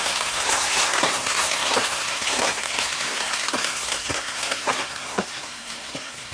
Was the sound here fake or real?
fake